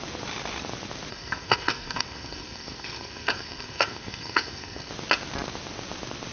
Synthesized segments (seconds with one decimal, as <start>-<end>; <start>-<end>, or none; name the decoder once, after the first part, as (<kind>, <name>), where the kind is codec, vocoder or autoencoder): 1.1-4.9 (codec, SNAC)